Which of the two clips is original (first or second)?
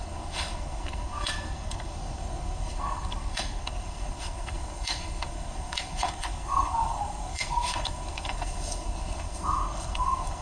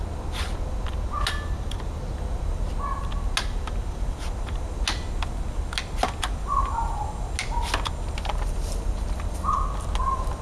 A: second